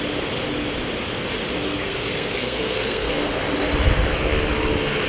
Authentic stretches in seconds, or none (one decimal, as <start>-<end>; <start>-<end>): 0.0-1.7; 3.3-5.1